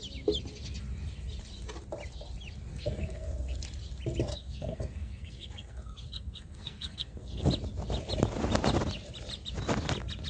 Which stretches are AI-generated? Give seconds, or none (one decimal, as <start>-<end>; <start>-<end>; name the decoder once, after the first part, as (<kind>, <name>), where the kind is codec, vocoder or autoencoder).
2.7-3.6 (codec, SNAC); 4.3-7.5